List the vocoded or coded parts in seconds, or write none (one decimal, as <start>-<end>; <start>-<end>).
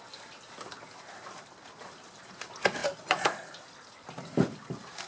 none